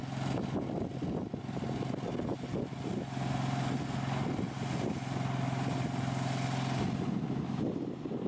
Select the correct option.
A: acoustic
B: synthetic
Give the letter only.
A